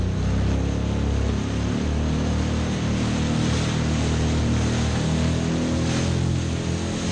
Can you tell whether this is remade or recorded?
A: recorded